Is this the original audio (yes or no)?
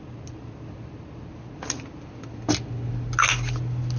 yes